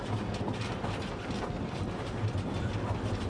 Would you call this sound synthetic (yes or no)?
no